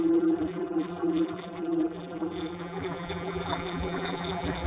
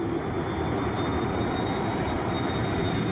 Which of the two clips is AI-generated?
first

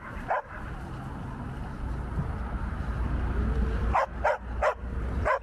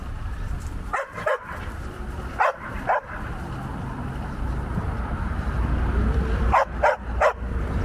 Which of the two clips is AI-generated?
second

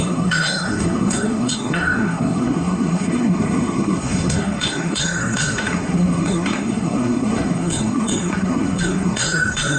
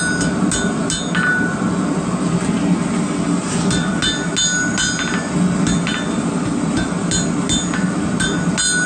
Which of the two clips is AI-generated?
first